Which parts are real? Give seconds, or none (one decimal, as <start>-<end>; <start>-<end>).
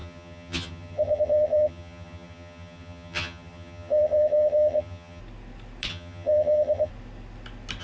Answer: 5.2-5.9; 6.9-7.8